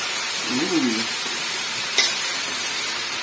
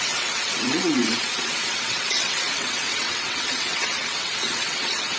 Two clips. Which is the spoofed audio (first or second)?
second